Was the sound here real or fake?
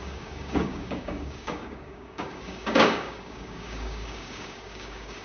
fake